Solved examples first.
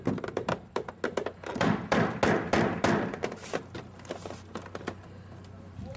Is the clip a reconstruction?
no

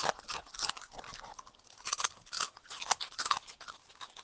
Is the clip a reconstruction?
no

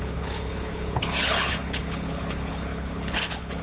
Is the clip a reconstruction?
yes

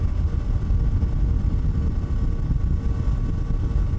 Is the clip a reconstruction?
no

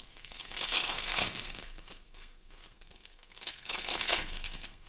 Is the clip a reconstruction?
yes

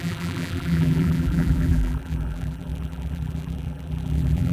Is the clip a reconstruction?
yes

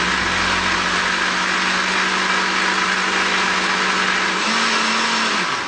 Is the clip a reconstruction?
no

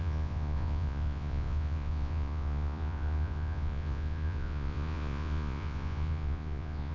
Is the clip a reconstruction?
yes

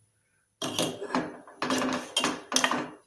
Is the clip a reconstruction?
no